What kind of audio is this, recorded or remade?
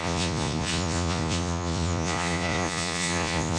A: remade